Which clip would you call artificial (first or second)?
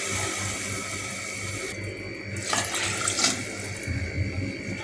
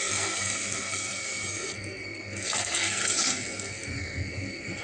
second